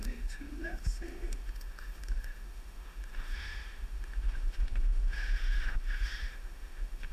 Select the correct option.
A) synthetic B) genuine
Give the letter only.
A